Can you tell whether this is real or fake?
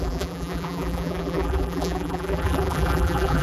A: fake